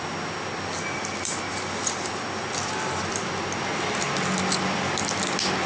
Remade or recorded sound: recorded